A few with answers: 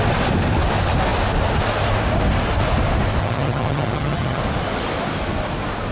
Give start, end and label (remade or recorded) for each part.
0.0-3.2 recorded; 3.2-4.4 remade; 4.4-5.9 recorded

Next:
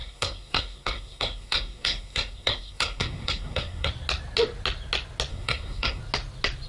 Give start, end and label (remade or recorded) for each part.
0.0-3.9 remade; 3.9-5.3 recorded; 5.3-6.0 remade; 6.0-6.7 recorded